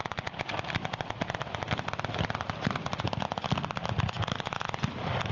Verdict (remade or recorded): recorded